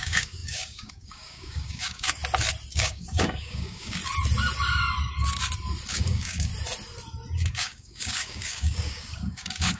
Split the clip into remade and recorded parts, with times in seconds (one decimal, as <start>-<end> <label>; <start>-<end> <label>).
0.0-2.2 remade; 2.2-2.7 recorded; 2.7-4.0 remade; 4.0-5.9 recorded; 5.9-6.5 remade; 6.5-7.5 recorded; 7.5-9.8 remade